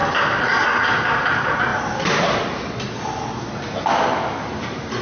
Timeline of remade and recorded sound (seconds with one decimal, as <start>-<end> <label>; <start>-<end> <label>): 0.0-0.8 recorded; 0.8-1.7 remade; 1.7-4.6 recorded; 4.6-5.0 remade